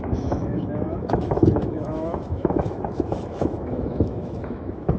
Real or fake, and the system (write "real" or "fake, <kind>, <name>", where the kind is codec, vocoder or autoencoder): fake, autoencoder, DAC-VAE